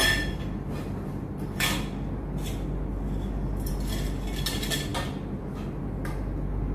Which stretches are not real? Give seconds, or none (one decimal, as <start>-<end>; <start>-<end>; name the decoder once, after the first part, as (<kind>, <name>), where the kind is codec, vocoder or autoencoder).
none